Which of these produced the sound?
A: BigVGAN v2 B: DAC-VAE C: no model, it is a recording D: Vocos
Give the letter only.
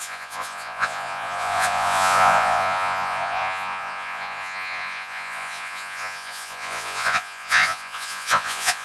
D